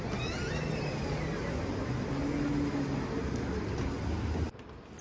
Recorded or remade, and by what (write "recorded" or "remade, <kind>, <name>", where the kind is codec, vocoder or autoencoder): recorded